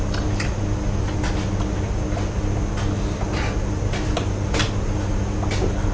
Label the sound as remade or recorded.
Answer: recorded